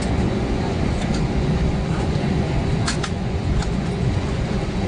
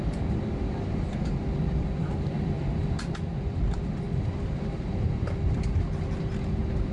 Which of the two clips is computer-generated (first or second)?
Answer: first